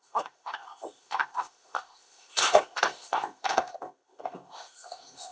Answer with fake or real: fake